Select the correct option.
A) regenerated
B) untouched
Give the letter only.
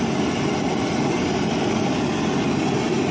B